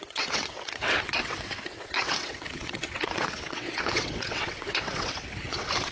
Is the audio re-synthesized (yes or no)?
yes